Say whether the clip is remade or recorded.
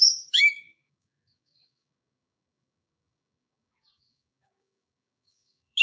remade